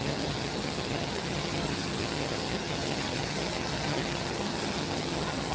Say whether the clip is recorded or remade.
remade